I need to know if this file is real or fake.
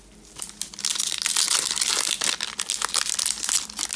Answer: real